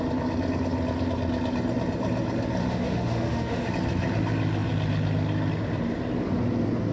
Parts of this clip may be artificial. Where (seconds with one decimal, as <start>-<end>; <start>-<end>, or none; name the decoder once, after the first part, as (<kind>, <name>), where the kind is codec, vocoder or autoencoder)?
2.6-3.7 (autoencoder, DAC-VAE)

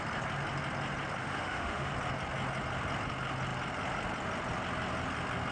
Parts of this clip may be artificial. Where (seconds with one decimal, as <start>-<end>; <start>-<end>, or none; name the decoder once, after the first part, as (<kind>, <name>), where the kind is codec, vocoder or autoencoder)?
1.2-1.9 (autoencoder, DAC-VAE)

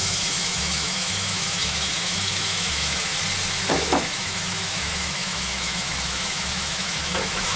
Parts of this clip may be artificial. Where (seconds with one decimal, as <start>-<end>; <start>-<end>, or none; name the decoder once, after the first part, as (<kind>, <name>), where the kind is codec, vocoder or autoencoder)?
0.0-3.1 (autoencoder, DAC-VAE); 3.7-7.6